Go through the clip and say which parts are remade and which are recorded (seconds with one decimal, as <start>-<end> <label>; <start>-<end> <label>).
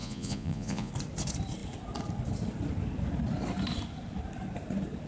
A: 0.0-0.9 remade; 0.9-5.1 recorded